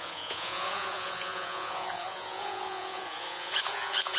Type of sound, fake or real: fake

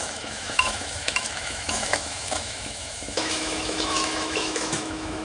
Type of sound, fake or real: fake